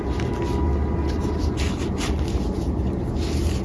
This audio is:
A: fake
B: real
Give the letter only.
B